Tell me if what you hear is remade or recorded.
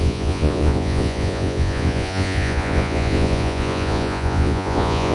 remade